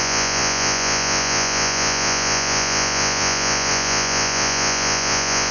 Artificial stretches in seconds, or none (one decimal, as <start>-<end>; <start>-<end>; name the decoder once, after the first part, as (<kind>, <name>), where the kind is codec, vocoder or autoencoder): 0.0-5.5 (vocoder, Vocos)